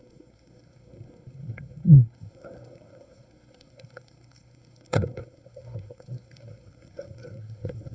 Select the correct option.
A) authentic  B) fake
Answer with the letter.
B